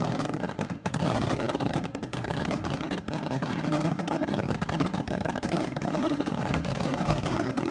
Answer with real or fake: fake